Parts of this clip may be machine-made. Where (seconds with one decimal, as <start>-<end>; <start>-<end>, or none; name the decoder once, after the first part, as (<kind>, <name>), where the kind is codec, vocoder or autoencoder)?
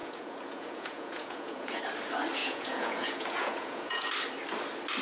0.0-1.8 (vocoder, Vocos); 2.4-4.1